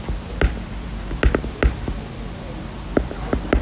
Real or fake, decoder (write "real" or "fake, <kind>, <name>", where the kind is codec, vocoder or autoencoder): real